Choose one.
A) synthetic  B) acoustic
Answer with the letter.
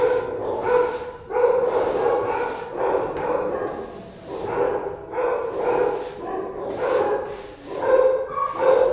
B